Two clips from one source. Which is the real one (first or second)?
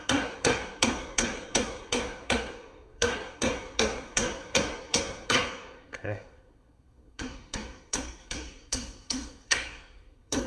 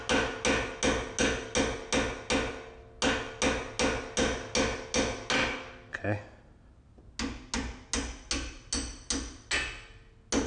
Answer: second